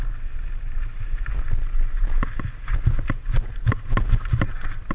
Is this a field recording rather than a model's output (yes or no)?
yes